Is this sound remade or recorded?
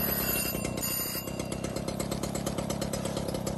remade